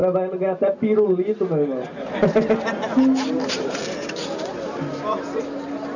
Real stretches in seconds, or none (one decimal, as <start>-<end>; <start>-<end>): 0.0-6.0